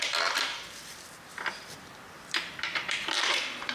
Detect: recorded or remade remade